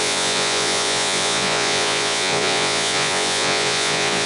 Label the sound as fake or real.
fake